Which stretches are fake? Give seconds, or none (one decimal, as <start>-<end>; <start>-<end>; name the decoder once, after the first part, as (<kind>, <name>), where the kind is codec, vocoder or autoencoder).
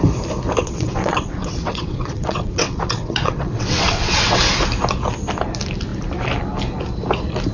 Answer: 0.6-4.4 (vocoder, WaveNeXt)